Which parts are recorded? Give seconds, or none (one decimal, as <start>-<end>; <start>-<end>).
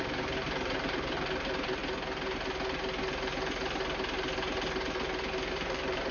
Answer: 1.8-5.5